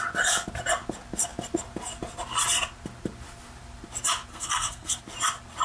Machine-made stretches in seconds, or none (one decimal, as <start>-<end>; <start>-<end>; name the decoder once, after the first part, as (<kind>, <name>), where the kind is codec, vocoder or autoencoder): 4.3-5.0 (codec, SNAC)